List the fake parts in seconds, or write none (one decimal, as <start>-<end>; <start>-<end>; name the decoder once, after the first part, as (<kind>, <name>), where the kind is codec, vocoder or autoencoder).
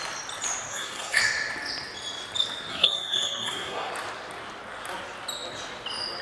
0.7-1.2 (codec, SNAC); 2.7-3.9